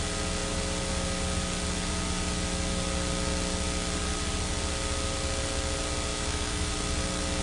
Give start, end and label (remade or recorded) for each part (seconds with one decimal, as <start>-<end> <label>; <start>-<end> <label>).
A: 0.0-6.1 recorded; 6.1-6.7 remade; 6.7-7.4 recorded